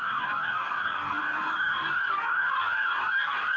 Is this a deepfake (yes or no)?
yes